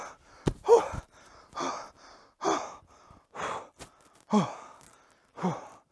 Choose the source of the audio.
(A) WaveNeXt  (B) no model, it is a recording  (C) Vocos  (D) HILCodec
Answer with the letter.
B